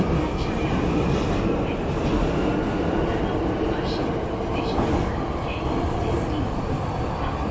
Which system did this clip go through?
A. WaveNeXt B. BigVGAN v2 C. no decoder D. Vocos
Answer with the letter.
C